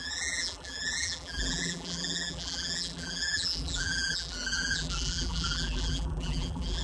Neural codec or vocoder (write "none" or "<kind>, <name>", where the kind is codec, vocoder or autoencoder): vocoder, BigVGAN v2